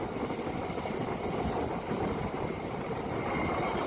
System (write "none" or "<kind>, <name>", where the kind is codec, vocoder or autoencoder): none